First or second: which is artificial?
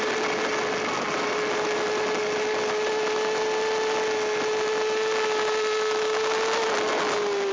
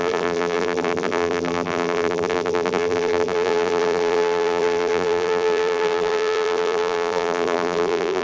second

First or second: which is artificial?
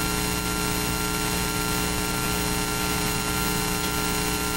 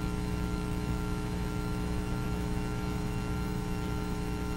second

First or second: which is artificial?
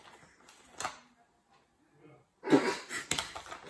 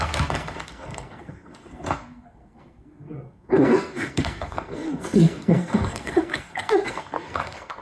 second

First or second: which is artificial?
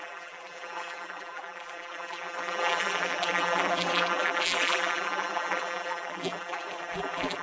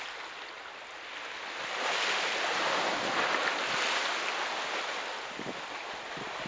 first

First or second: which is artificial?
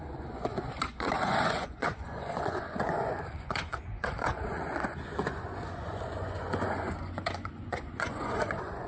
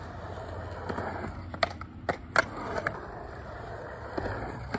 first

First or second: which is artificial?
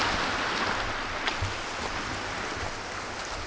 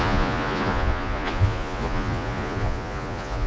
second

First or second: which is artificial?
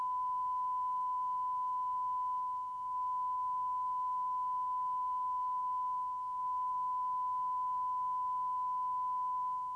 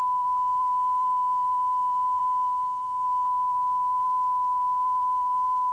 second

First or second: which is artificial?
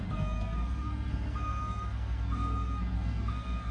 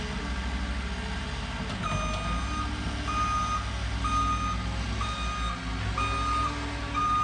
first